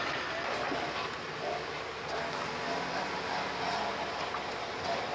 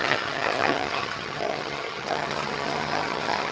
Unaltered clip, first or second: first